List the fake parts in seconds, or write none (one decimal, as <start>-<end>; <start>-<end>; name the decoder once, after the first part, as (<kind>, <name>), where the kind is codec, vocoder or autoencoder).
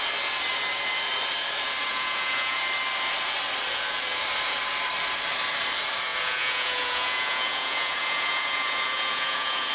1.9-2.6 (vocoder, Vocos); 6.1-9.7